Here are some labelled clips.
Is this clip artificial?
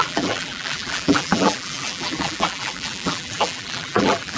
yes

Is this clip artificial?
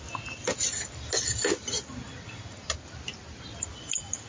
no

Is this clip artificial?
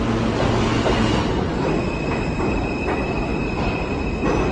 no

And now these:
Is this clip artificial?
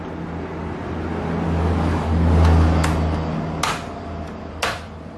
no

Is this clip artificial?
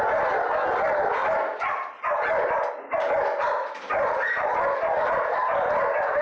no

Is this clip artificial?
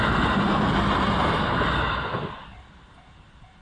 no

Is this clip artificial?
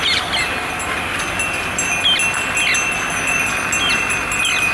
no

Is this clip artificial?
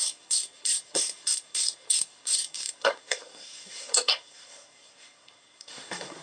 yes